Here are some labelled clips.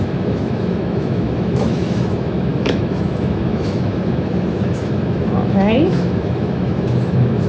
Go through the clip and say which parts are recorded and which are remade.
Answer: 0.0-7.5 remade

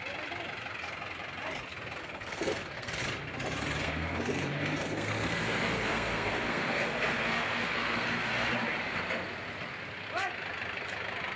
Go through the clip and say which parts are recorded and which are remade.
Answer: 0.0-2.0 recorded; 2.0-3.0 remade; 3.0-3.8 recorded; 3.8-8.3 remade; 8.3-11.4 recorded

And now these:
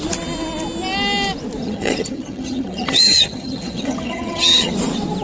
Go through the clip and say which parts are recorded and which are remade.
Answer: 0.0-1.6 recorded; 1.6-4.7 remade; 4.7-5.2 recorded

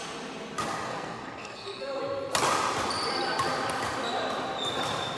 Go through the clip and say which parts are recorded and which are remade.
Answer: 0.0-0.9 recorded; 0.9-1.9 remade; 1.9-5.2 recorded

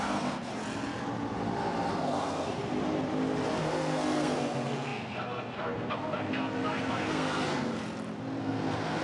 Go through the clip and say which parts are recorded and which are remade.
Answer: 0.0-0.5 remade; 0.5-1.9 recorded; 1.9-2.6 remade; 2.6-3.6 recorded; 3.6-7.7 remade; 7.7-8.4 recorded; 8.4-9.0 remade

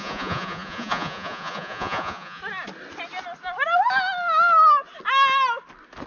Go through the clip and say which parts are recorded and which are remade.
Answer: 0.0-2.4 remade; 2.4-6.1 recorded